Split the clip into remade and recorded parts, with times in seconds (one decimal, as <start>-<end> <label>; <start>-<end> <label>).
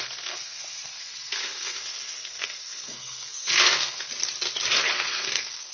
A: 0.0-4.1 remade; 4.1-4.9 recorded; 4.9-5.7 remade